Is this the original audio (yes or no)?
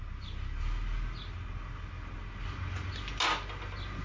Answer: yes